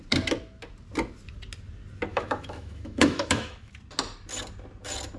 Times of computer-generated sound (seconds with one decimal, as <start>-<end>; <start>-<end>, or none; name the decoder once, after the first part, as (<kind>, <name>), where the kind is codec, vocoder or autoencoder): 2.1-3.7 (autoencoder, DAC-VAE)